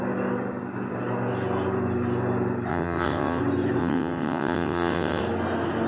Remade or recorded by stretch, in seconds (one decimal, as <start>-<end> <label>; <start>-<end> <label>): 0.0-2.7 recorded; 2.7-3.4 remade; 3.4-3.8 recorded; 3.8-5.2 remade; 5.2-5.9 recorded